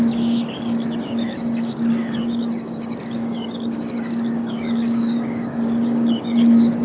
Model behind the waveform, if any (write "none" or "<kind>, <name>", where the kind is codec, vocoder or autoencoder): codec, DAC